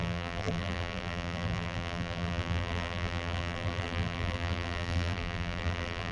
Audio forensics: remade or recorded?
remade